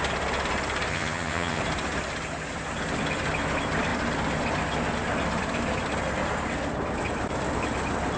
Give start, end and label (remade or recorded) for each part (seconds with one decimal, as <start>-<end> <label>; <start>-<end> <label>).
0.0-0.9 recorded; 0.9-1.6 remade; 1.6-8.2 recorded